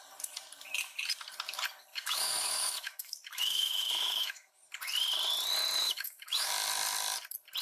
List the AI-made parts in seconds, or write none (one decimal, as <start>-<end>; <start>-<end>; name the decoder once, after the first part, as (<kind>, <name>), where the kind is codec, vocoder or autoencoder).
1.9-4.5 (autoencoder, DAC-VAE); 5.8-6.5